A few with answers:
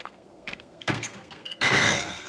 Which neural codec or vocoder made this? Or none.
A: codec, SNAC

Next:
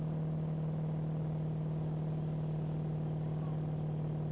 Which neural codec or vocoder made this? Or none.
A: none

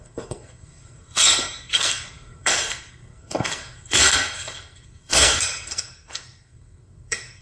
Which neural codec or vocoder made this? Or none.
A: codec, SNAC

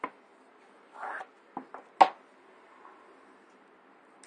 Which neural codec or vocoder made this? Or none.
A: none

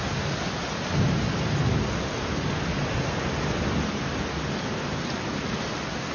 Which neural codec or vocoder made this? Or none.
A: none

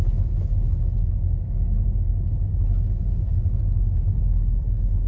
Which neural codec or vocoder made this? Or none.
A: none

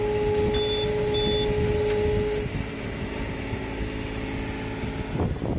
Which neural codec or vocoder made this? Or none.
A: none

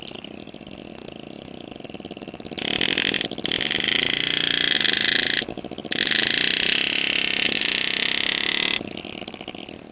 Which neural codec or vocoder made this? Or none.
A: none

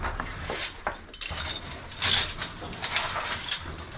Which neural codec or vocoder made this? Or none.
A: none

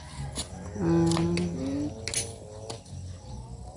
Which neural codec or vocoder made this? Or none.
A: none